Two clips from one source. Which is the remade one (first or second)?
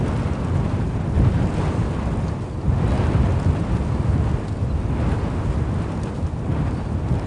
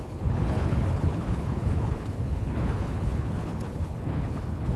second